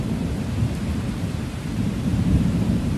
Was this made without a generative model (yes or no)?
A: no